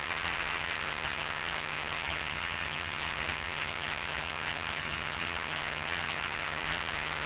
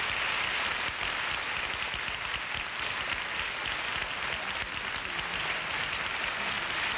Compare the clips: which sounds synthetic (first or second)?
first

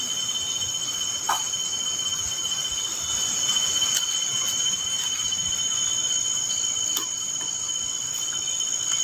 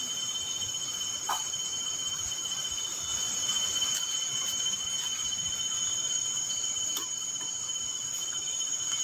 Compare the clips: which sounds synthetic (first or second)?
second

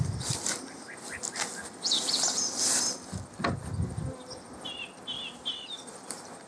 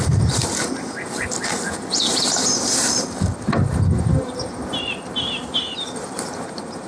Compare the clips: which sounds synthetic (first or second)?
second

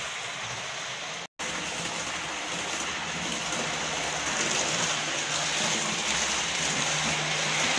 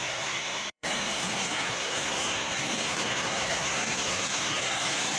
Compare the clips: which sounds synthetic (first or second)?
second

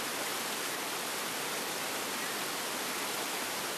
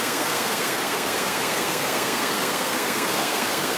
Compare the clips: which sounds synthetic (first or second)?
second